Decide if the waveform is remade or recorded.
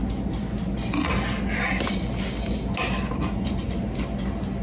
recorded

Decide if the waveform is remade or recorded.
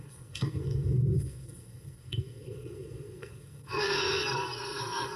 remade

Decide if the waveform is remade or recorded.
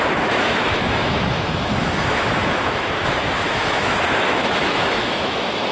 remade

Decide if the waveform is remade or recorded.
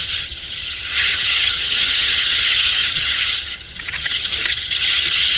remade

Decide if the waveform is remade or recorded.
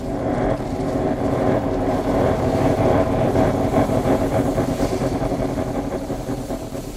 remade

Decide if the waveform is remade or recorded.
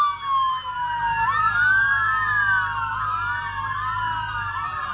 recorded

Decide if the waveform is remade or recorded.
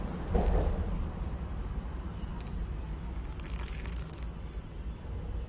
recorded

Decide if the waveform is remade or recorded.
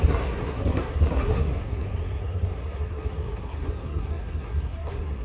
remade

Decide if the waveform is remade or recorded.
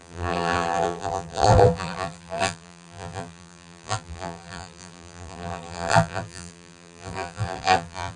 remade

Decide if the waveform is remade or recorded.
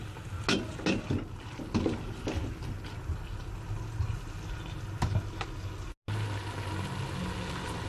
recorded